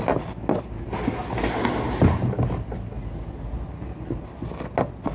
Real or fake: real